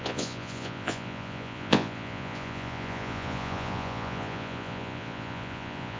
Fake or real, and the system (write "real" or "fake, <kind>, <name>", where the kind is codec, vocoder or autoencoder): fake, vocoder, Vocos